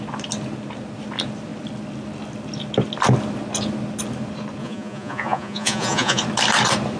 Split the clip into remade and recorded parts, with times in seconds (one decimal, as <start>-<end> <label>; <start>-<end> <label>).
0.0-4.6 recorded; 4.6-6.2 remade; 6.2-7.0 recorded